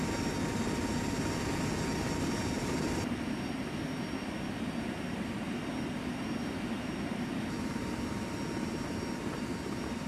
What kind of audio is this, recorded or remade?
recorded